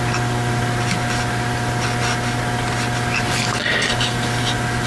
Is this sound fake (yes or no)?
no